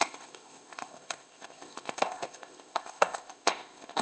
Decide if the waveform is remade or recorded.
remade